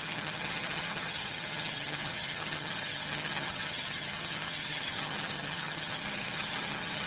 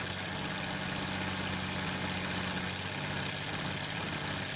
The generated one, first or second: first